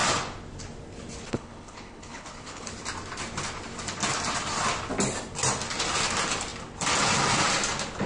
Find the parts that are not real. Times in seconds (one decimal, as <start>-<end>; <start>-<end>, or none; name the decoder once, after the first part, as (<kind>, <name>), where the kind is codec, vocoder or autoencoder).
1.3-2.7 (codec, HILCodec)

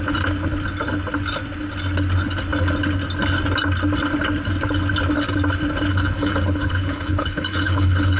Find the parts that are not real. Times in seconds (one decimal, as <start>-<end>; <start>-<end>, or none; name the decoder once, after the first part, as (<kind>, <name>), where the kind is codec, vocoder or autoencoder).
5.9-8.2 (codec, HILCodec)

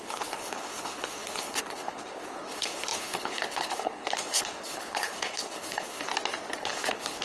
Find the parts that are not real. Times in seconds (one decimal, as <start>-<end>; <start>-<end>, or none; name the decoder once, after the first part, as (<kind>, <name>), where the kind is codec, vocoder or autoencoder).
0.0-6.1 (codec, HILCodec); 6.6-7.2

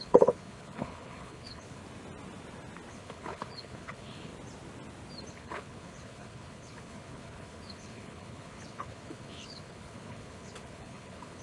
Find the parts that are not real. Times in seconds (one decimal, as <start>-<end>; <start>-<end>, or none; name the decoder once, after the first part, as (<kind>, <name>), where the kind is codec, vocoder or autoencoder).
0.0-1.8 (codec, HILCodec); 2.9-4.3; 5.3-11.4

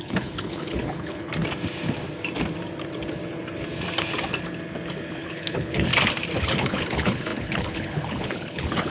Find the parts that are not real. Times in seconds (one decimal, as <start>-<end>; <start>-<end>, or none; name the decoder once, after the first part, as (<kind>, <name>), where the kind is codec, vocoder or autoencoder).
0.0-1.3 (codec, HILCodec); 5.1-5.9; 6.4-8.9